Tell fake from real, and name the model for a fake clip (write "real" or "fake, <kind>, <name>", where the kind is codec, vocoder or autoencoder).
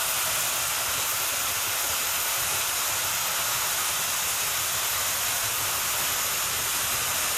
real